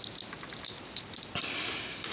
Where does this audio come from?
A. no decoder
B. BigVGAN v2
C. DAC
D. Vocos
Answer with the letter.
A